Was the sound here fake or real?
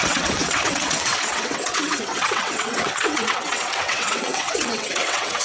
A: fake